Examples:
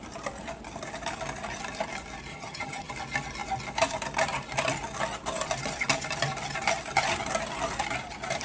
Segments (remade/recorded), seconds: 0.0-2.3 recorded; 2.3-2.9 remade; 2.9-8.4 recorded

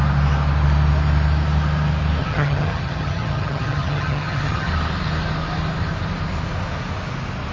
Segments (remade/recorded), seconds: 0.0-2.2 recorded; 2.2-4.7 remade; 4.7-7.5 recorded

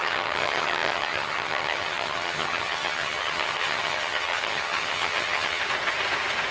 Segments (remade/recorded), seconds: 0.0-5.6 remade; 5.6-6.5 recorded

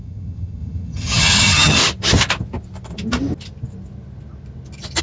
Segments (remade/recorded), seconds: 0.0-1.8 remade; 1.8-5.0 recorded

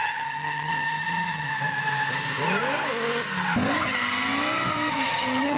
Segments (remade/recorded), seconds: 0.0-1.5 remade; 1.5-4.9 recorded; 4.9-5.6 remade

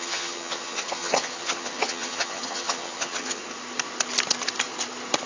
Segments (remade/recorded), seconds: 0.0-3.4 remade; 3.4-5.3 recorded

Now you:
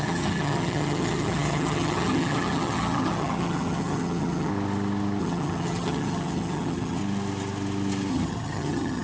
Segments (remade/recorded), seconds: 0.0-4.5 remade; 4.5-5.2 recorded; 5.2-7.0 remade; 7.0-8.1 recorded; 8.1-9.0 remade

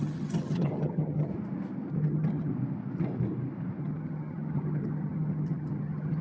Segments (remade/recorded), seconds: 0.0-1.3 remade; 1.3-1.9 recorded; 1.9-2.5 remade; 2.5-3.8 recorded; 3.8-6.2 remade